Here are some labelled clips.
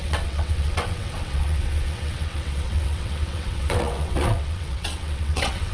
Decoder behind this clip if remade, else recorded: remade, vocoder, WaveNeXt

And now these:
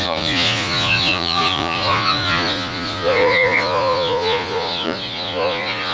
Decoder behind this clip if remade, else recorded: remade, vocoder, Vocos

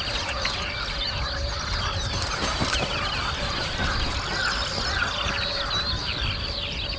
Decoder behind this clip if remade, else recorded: recorded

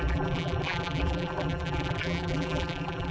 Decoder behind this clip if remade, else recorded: remade, vocoder, BigVGAN v2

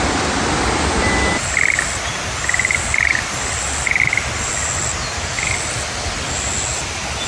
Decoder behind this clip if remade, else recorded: recorded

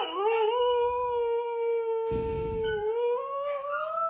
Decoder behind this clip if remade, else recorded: remade, codec, DAC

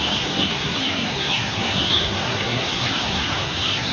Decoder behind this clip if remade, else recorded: remade, codec, SNAC